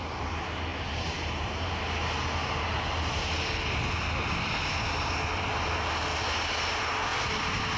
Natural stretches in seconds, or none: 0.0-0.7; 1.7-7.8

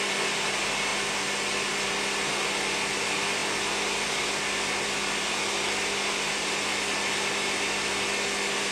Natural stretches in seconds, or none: 0.0-8.7

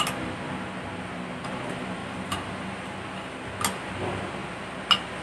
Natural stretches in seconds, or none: 0.0-2.0; 2.5-5.2

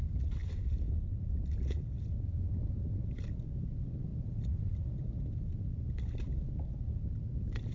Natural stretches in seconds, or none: 0.0-0.4; 0.9-7.7